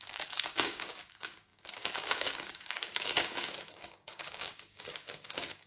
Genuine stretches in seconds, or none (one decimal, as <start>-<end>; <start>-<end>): none